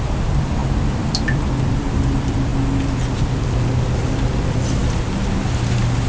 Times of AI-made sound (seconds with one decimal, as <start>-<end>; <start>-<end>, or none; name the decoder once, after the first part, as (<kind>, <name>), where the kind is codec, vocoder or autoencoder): 0.0-2.5 (vocoder, BigVGAN v2); 3.2-4.8